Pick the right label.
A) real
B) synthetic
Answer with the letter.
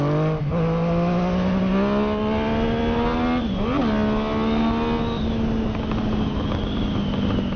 A